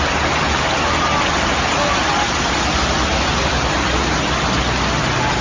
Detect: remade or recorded recorded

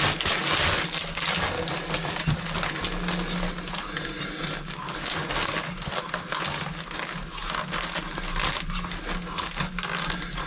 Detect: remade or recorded recorded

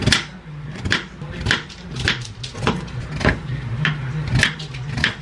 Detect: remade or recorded recorded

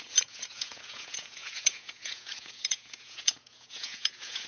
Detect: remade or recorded remade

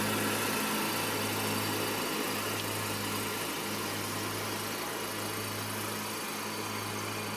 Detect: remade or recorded recorded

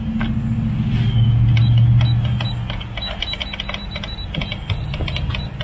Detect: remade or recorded recorded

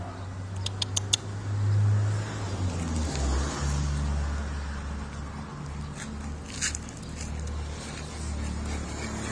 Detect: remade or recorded recorded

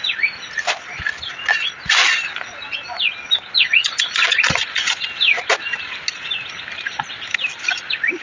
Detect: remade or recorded recorded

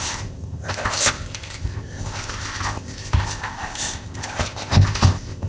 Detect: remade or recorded remade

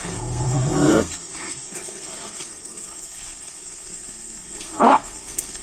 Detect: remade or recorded remade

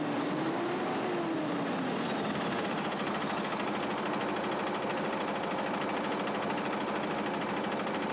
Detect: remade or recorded recorded